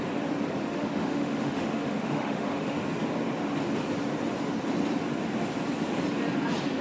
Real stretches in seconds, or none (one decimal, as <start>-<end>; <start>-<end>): 0.0-0.6; 2.8-6.8